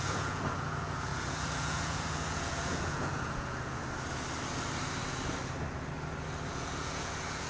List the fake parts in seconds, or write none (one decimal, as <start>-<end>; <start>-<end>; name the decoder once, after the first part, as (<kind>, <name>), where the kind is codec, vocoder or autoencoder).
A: 0.0-3.8 (vocoder, Vocos); 6.5-7.5